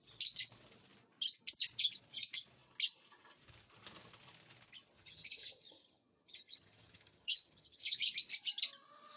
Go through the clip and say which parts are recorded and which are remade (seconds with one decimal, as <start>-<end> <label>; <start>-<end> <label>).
0.0-5.0 recorded; 5.0-7.9 remade; 7.9-9.2 recorded